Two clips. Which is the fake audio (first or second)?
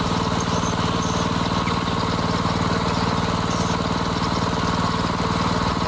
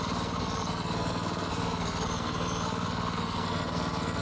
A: second